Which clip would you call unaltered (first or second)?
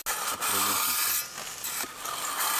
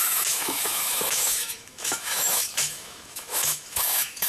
first